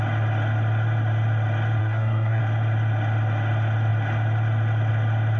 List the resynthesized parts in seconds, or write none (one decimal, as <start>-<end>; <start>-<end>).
1.8-2.4